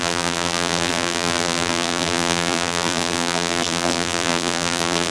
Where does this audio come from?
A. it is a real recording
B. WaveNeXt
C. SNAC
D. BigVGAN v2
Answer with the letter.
D